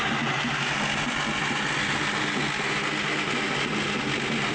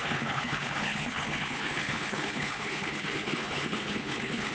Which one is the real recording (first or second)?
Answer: first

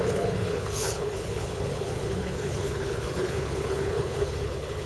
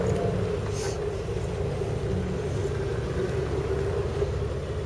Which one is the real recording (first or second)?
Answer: second